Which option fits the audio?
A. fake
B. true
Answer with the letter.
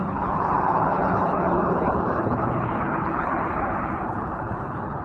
A